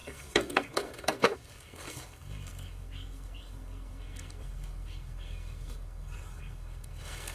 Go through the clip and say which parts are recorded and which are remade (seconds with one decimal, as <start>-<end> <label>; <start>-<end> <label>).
0.0-7.3 remade